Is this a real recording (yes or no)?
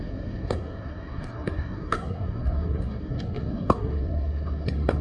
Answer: no